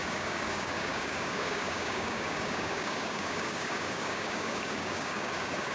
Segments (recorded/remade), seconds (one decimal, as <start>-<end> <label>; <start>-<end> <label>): 0.0-5.7 remade